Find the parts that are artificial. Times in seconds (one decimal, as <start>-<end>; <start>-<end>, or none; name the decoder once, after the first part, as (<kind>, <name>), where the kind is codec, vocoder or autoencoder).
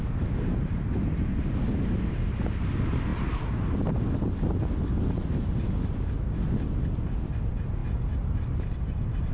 none